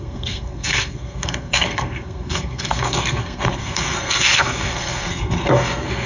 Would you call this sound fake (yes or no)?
yes